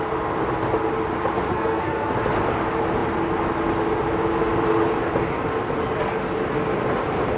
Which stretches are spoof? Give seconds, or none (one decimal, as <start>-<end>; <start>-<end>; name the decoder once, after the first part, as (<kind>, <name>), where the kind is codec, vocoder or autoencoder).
1.5-2.1 (codec, SNAC)